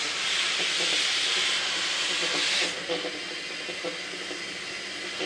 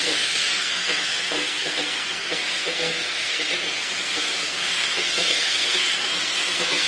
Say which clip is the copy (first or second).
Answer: second